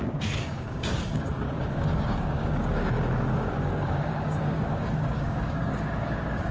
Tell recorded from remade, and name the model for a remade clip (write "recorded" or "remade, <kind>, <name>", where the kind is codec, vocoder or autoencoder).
remade, codec, DAC